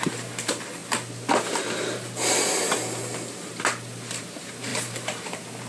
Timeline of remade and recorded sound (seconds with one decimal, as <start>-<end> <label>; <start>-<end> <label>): 0.0-0.8 remade; 0.8-4.2 recorded; 4.2-5.7 remade